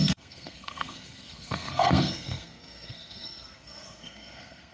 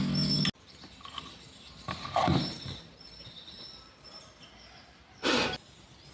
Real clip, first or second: second